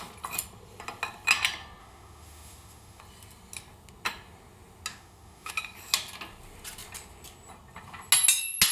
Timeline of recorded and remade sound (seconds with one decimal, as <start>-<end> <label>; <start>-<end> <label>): 0.0-1.8 recorded; 1.8-3.0 remade; 3.0-4.9 recorded; 4.9-5.5 remade; 5.5-8.7 recorded